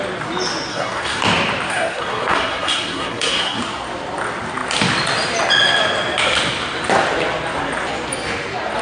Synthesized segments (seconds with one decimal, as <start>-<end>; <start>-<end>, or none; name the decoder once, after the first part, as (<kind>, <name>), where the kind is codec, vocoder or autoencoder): 0.7-1.2 (codec, SNAC); 1.7-3.6